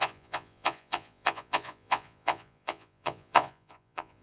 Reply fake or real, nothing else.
fake